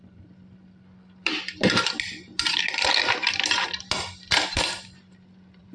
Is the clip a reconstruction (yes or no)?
yes